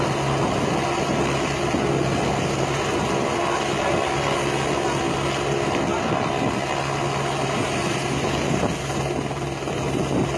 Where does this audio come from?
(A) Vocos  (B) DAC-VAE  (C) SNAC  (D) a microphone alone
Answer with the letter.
D